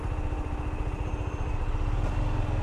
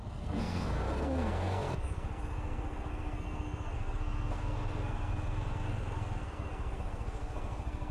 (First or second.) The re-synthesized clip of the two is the second